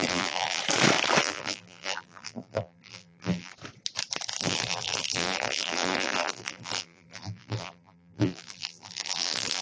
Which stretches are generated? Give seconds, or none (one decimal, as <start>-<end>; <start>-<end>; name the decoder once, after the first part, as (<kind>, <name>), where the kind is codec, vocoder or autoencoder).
0.0-0.6 (vocoder, BigVGAN v2); 1.2-3.5; 4.4-9.6